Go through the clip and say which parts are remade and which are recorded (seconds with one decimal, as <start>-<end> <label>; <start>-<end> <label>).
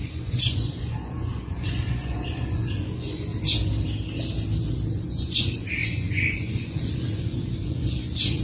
0.0-3.3 remade; 3.3-5.0 recorded; 5.0-8.4 remade